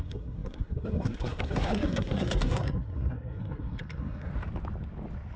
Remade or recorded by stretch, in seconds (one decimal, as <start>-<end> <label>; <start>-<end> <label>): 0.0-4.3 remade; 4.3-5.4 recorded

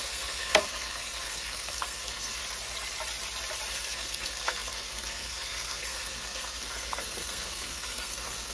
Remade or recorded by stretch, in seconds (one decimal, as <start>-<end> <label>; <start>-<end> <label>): 0.0-2.4 remade; 2.4-3.7 recorded; 3.7-8.5 remade

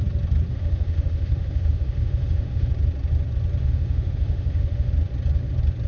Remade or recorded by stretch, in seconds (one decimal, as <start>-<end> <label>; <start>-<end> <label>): 0.0-0.5 recorded; 0.5-2.7 remade; 2.7-3.6 recorded; 3.6-4.9 remade; 4.9-5.9 recorded

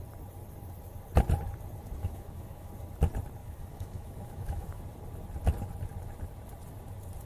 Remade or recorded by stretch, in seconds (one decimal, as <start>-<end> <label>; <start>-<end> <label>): 0.0-2.0 recorded; 2.0-2.7 remade; 2.7-3.4 recorded; 3.4-4.8 remade; 4.8-7.3 recorded

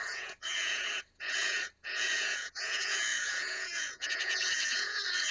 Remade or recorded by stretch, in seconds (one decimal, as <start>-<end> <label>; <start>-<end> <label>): 0.0-5.3 remade